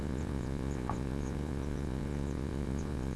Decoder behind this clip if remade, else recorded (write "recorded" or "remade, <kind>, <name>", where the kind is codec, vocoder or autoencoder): remade, vocoder, Vocos